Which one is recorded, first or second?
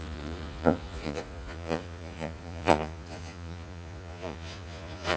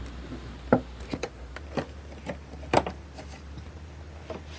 second